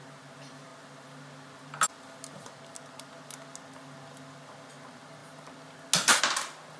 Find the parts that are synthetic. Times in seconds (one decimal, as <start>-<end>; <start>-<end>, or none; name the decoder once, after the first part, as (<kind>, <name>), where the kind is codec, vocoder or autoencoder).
none